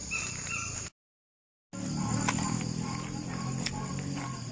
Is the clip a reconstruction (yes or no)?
no